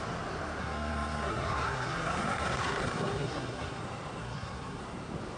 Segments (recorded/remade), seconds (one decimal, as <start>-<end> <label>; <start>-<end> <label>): 0.0-0.6 recorded; 0.6-3.8 remade; 3.8-4.2 recorded; 4.2-4.8 remade; 4.8-5.4 recorded